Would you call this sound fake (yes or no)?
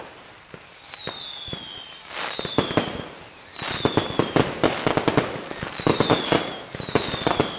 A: no